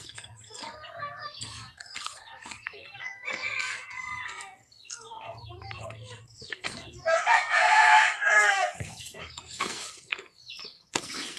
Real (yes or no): no